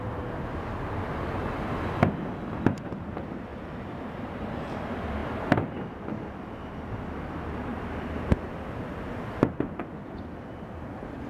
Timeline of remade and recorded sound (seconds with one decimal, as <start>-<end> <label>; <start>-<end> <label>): 0.0-3.5 recorded; 3.5-4.4 remade; 4.4-5.2 recorded; 5.2-7.1 remade; 7.1-7.7 recorded; 7.7-10.5 remade; 10.5-11.3 recorded